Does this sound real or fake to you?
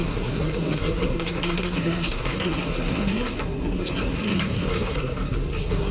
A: fake